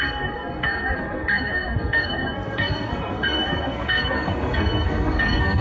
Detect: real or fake fake